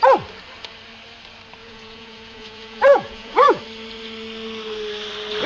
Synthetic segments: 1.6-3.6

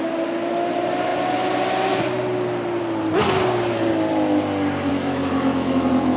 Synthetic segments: 4.9-6.2